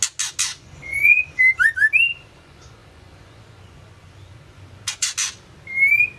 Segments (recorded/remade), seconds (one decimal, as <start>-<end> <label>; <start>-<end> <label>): 0.0-0.5 recorded; 0.5-1.4 remade; 1.4-2.1 recorded; 2.1-5.1 remade; 5.1-6.2 recorded